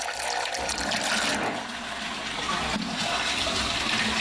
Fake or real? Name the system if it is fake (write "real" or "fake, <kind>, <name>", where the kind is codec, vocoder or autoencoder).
real